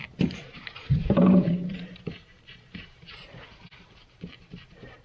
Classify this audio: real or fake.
fake